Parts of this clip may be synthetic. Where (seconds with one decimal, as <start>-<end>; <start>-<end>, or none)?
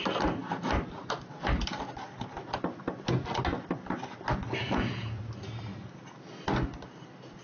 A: 4.6-5.2